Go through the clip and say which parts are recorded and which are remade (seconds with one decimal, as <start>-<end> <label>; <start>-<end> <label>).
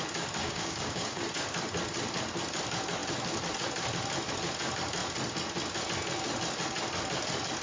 0.0-0.4 recorded; 0.4-1.2 remade; 1.2-7.6 recorded